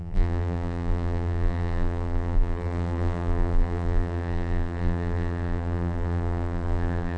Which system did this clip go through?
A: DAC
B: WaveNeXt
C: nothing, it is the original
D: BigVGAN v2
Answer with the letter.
D